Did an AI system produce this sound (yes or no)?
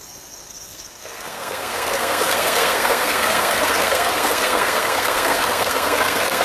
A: yes